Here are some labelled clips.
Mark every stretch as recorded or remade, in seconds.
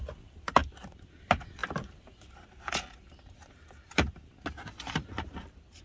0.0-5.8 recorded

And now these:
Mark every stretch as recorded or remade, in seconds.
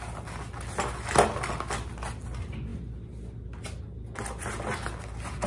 0.0-5.5 recorded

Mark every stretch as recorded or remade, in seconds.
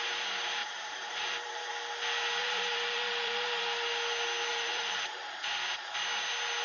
0.0-0.6 recorded; 0.6-1.7 remade; 1.7-2.4 recorded; 2.4-3.6 remade; 3.6-4.5 recorded; 4.5-5.2 remade; 5.2-6.6 recorded